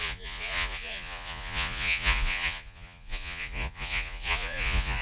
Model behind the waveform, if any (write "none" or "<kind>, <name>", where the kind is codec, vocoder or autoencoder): vocoder, Vocos